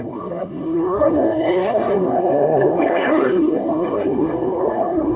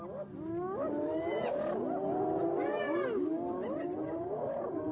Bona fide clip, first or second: second